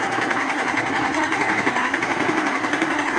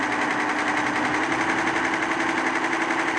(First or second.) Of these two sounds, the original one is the second